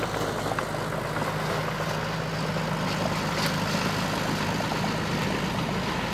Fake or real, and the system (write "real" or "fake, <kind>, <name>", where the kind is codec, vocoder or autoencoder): real